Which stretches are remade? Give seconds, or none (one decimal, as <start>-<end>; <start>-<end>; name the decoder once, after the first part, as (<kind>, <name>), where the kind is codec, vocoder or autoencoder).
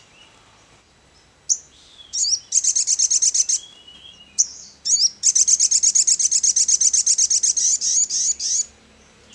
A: none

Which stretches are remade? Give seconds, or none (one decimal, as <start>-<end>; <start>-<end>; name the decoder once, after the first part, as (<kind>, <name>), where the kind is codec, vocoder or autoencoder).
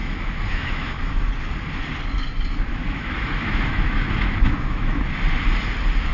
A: 0.0-1.3 (autoencoder, DAC-VAE); 2.7-5.0